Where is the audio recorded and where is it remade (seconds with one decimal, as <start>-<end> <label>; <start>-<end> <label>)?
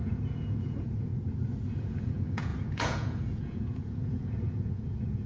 0.0-1.1 remade; 1.1-1.8 recorded; 1.8-5.3 remade